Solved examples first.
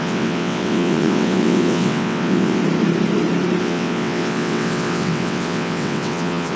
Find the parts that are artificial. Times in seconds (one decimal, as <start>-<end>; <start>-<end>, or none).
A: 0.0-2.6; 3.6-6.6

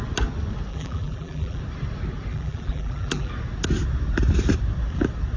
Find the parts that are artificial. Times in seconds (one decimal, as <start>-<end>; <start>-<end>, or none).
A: 0.7-1.6; 2.3-3.3

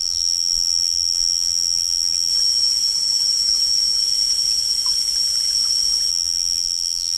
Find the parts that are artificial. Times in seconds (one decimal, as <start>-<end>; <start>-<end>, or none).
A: 0.0-2.3; 6.1-7.2